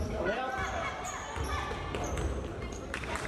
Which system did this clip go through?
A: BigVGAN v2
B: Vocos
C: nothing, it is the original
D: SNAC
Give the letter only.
C